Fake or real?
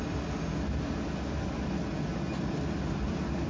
real